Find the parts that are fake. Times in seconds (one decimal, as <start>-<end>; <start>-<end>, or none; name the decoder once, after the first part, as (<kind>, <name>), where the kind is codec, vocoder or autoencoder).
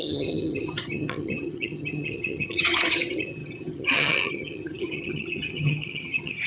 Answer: 0.0-6.5 (vocoder, HiFi-GAN)